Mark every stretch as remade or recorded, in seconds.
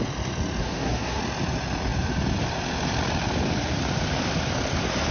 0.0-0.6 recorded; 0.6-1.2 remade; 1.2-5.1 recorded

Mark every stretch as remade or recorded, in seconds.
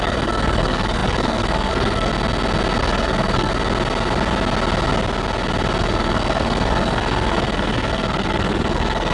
0.0-2.1 remade; 2.1-2.8 recorded; 2.8-3.5 remade; 3.5-5.8 recorded; 5.8-9.1 remade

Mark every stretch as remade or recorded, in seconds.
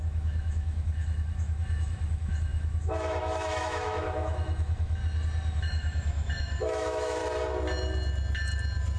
0.0-5.0 remade; 5.0-5.6 recorded; 5.6-7.2 remade; 7.2-9.0 recorded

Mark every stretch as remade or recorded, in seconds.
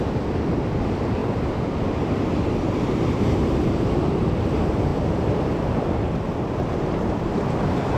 0.0-1.2 recorded; 1.2-2.3 remade; 2.3-8.0 recorded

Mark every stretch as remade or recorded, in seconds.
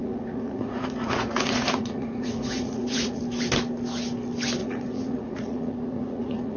0.0-3.2 remade; 3.2-4.6 recorded; 4.6-6.6 remade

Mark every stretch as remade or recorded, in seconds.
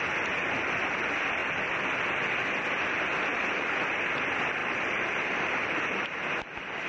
0.0-3.3 recorded; 3.3-3.8 remade; 3.8-4.6 recorded; 4.6-6.0 remade; 6.0-6.9 recorded